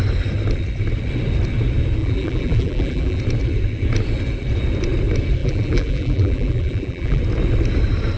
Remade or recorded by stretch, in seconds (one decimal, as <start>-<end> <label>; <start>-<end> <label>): 0.0-2.0 recorded; 2.0-3.2 remade; 3.2-5.4 recorded; 5.4-7.2 remade; 7.2-8.2 recorded